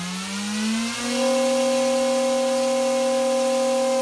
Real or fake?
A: real